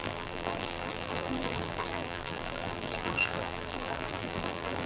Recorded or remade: remade